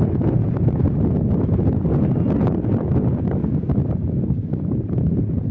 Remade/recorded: recorded